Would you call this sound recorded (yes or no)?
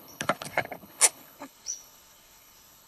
no